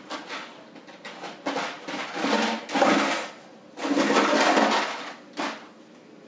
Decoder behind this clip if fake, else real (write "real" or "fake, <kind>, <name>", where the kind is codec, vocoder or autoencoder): real